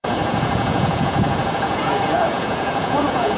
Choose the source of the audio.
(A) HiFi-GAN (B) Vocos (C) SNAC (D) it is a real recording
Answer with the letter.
B